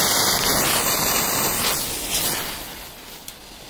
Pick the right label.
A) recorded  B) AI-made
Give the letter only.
A